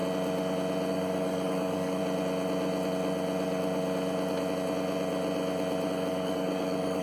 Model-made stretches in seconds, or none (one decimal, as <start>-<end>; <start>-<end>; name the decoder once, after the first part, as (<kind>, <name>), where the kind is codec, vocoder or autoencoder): 0.9-2.0 (codec, DAC); 6.1-7.0